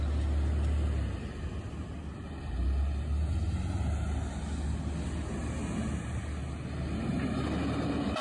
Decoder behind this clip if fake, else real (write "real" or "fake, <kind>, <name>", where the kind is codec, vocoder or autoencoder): real